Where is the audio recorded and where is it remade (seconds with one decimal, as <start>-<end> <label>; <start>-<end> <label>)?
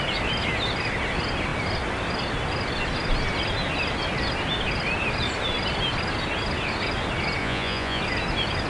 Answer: 0.0-7.4 recorded; 7.4-8.0 remade; 8.0-8.7 recorded